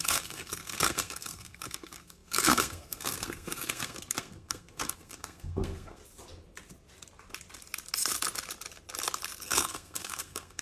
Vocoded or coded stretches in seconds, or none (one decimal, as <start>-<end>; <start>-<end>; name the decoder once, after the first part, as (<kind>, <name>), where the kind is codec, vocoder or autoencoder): 0.0-6.0 (codec, SNAC); 9.4-10.6